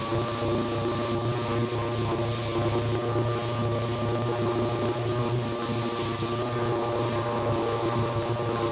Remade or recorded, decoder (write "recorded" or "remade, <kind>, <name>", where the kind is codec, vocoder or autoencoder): recorded